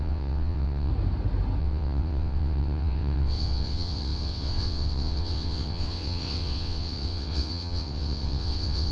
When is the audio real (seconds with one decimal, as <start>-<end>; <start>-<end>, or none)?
0.9-1.6